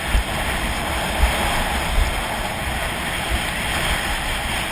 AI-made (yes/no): no